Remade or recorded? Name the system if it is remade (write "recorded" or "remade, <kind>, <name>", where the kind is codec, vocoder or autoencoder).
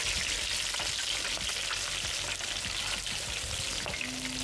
recorded